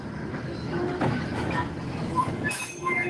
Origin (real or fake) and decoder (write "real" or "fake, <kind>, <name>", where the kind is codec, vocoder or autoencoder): fake, autoencoder, DAC-VAE